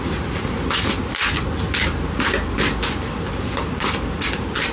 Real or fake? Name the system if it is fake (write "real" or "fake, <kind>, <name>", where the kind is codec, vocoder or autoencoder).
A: real